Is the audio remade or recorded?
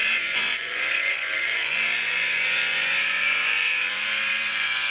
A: remade